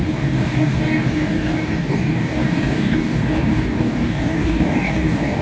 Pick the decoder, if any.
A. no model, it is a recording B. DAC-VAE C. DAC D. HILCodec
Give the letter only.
C